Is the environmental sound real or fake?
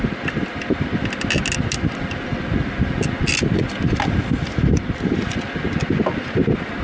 real